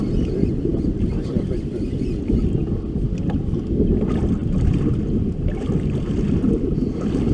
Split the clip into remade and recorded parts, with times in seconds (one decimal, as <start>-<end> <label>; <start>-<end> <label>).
0.0-7.3 recorded